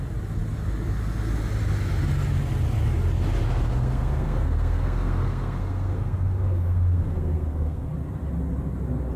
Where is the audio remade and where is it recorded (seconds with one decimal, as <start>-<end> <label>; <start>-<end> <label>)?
0.0-3.7 recorded; 3.7-7.9 remade; 7.9-9.2 recorded